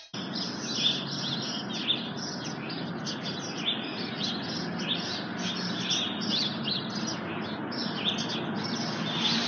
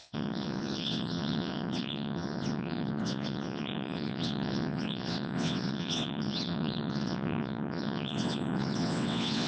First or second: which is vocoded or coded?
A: second